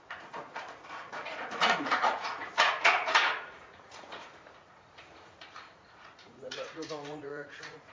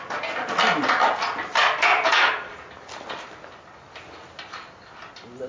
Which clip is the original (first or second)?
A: second